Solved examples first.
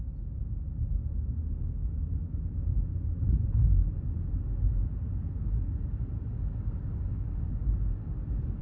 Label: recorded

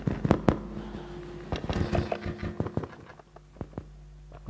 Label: recorded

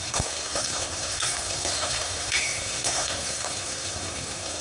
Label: remade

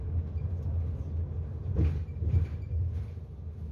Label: recorded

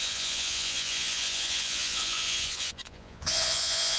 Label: remade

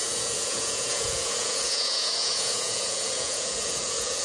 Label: remade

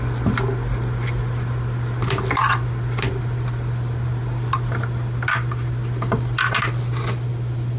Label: recorded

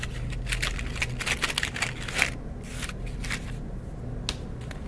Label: recorded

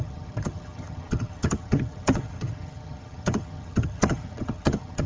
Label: remade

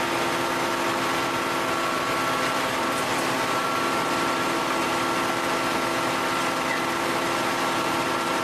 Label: recorded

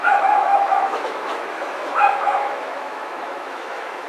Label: remade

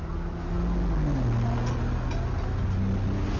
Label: recorded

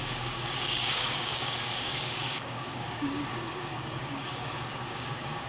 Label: remade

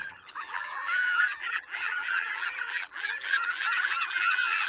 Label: remade